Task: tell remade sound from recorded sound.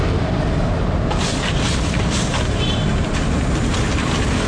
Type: remade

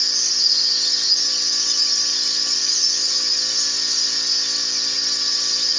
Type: recorded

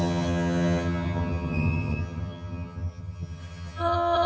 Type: remade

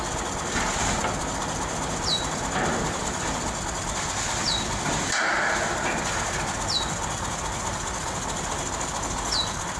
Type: recorded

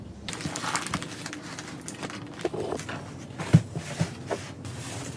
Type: recorded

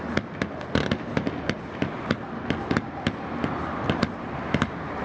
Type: recorded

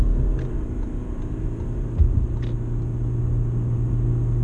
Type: recorded